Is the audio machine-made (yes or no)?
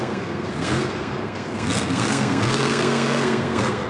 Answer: yes